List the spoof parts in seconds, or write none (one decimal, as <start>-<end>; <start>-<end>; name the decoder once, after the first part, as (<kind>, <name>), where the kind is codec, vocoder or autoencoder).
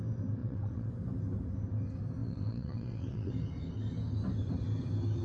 0.4-0.9 (vocoder, WaveNeXt); 2.2-3.3